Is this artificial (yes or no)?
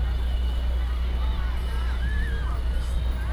no